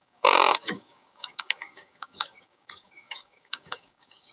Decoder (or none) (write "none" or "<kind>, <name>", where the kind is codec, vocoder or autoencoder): codec, DAC